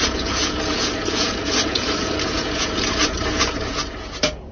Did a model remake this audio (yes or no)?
yes